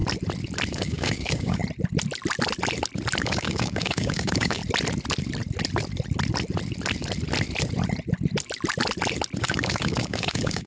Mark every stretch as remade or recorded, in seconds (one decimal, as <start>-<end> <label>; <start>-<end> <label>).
0.0-0.7 recorded; 0.7-1.6 remade; 1.6-3.2 recorded; 3.2-4.6 remade; 4.6-9.4 recorded; 9.4-10.7 remade

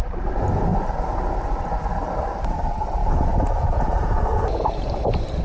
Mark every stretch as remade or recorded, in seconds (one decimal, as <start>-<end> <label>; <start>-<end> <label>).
0.0-3.0 recorded; 3.0-4.4 remade; 4.4-5.4 recorded

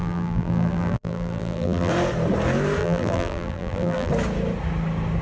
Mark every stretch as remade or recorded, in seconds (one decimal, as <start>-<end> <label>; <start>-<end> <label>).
0.0-1.9 remade; 1.9-2.8 recorded; 2.8-4.1 remade; 4.1-5.2 recorded